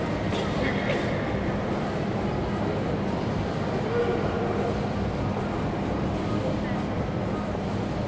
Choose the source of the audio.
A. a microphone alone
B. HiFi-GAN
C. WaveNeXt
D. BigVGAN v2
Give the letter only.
A